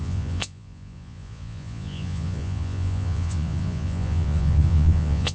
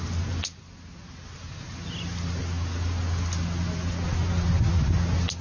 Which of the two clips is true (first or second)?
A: second